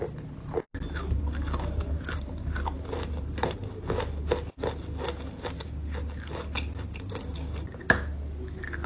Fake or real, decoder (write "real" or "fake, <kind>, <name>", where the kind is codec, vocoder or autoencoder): real